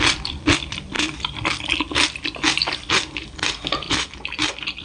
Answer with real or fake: real